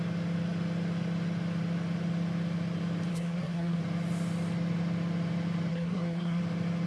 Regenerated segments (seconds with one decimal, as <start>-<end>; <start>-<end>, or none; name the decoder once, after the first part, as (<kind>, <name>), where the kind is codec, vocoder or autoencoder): 3.1-3.8 (codec, SNAC); 5.7-6.4